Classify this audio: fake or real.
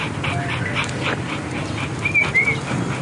real